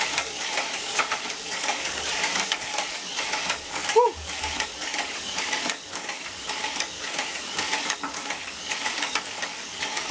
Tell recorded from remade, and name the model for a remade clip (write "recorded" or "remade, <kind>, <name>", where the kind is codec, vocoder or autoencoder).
remade, codec, DAC